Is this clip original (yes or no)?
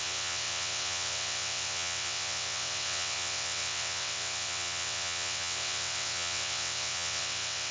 no